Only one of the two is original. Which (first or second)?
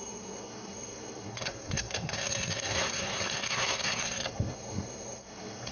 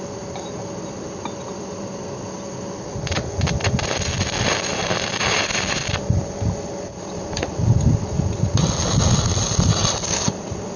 second